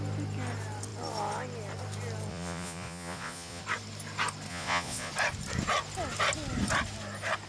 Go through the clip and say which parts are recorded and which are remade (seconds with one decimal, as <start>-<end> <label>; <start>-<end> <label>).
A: 0.0-2.3 recorded; 2.3-3.6 remade; 3.6-4.5 recorded; 4.5-5.1 remade; 5.1-7.5 recorded